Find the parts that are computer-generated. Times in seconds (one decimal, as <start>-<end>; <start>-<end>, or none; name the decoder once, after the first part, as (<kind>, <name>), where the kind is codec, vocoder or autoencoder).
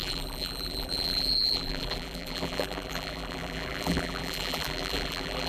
0.0-5.5 (vocoder, BigVGAN v2)